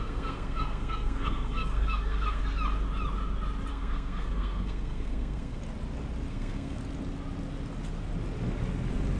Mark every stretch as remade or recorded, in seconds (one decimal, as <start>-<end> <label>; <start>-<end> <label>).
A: 0.0-2.4 remade; 2.4-3.7 recorded; 3.7-5.6 remade; 5.6-6.3 recorded; 6.3-6.8 remade; 6.8-9.2 recorded

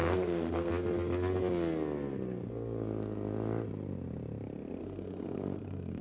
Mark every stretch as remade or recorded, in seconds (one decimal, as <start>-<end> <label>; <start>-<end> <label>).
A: 0.0-0.7 remade; 0.7-4.8 recorded; 4.8-6.0 remade

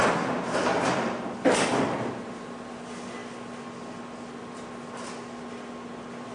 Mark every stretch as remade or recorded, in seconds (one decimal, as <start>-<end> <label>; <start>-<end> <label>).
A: 0.0-6.3 recorded

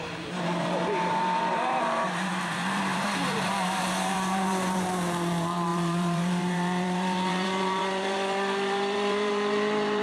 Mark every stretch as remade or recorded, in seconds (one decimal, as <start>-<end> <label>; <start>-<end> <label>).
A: 0.0-10.0 remade

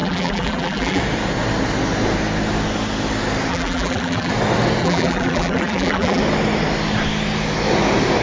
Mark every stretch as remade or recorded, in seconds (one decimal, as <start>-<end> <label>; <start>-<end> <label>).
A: 0.0-1.0 remade; 1.0-3.5 recorded; 3.5-4.3 remade; 4.3-4.8 recorded; 4.8-6.2 remade; 6.2-8.2 recorded

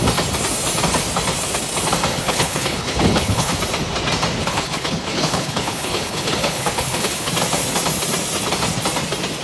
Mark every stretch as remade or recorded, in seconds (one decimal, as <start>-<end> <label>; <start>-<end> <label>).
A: 0.0-2.2 recorded; 2.2-3.6 remade; 3.6-4.4 recorded; 4.4-7.3 remade; 7.3-9.4 recorded